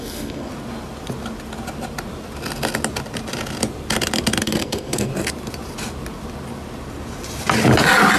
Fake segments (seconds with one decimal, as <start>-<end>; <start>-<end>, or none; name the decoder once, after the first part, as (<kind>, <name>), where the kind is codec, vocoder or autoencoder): 0.0-0.5 (codec, SNAC); 4.4-5.1